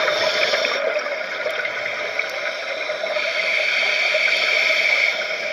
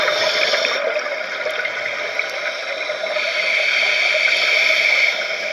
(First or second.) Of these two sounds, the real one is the second